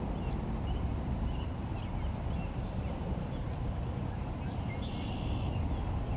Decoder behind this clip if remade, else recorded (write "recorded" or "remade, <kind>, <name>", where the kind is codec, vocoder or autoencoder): recorded